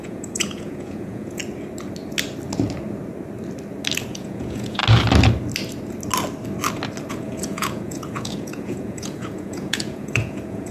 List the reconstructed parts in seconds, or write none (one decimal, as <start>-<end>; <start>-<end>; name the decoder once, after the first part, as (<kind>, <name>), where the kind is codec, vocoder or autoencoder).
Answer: 0.0-1.4 (vocoder, Vocos); 4.1-4.8; 7.1-10.7